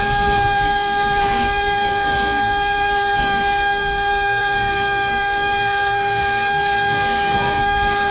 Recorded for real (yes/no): no